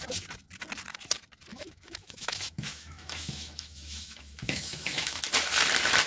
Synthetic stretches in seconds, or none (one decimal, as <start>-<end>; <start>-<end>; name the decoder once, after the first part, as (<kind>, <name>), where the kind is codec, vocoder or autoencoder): 1.5-5.2 (autoencoder, DAC-VAE)